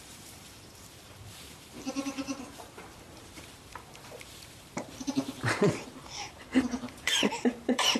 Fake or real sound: fake